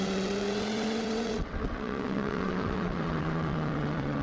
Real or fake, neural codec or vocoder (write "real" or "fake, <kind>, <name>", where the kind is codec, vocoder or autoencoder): fake, vocoder, WaveNeXt